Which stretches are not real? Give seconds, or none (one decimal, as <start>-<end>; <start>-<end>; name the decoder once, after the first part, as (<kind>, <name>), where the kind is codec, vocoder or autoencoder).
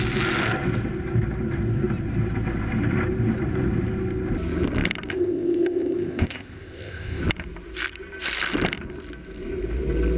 5.1-7.2 (codec, ZipCodec)